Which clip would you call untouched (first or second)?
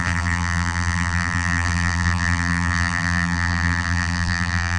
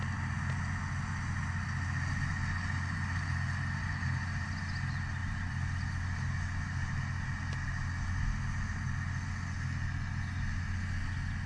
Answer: second